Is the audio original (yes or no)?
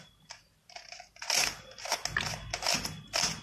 yes